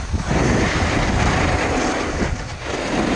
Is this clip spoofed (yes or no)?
no